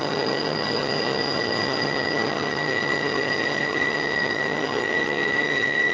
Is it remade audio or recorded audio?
remade